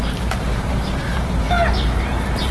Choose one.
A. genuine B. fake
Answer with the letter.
B